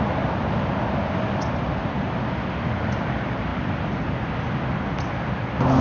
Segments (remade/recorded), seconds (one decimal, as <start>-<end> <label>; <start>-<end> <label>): 0.0-5.8 recorded